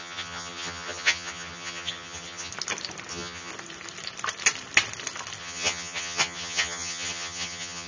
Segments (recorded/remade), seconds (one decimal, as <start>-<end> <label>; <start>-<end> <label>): 0.0-2.5 remade; 2.5-3.1 recorded; 3.1-3.5 remade; 3.5-5.4 recorded; 5.4-7.9 remade